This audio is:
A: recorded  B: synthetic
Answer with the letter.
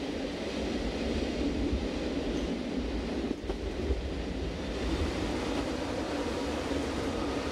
A